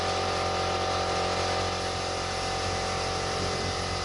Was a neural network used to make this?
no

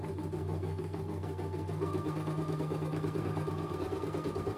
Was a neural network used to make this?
yes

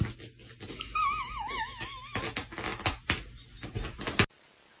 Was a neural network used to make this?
no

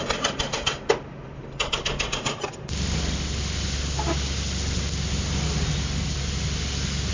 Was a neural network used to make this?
no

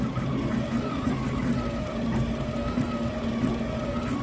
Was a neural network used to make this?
no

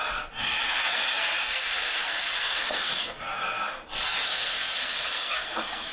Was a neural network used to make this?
yes